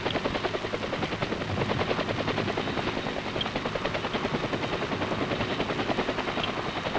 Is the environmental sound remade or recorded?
recorded